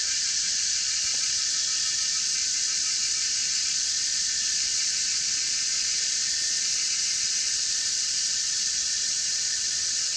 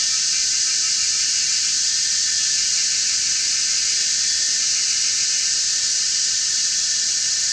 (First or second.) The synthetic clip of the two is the first